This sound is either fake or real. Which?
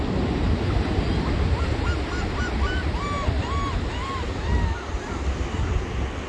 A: real